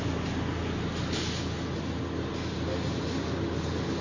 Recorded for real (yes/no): yes